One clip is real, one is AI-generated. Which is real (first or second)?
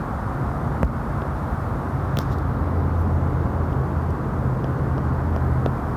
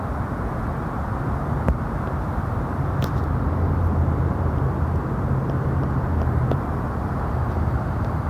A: first